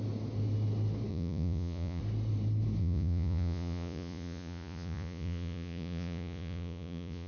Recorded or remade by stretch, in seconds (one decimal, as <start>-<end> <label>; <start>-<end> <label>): 0.0-1.1 recorded; 1.1-2.0 remade; 2.0-2.8 recorded; 2.8-7.3 remade